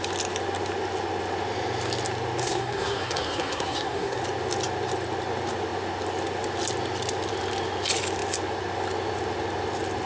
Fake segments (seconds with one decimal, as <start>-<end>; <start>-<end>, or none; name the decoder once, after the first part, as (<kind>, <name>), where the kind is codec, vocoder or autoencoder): 2.4-4.2 (codec, SNAC)